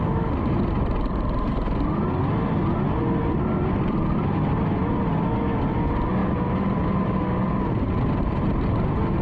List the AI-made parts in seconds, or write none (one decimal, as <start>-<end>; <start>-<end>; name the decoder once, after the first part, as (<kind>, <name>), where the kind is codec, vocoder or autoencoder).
none